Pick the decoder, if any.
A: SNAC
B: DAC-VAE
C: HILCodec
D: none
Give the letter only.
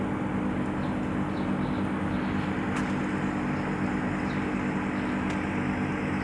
D